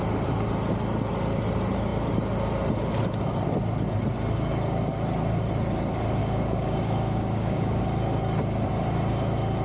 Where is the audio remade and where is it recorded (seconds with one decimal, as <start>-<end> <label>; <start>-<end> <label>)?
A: 0.0-6.2 recorded; 6.2-7.8 remade; 7.8-9.6 recorded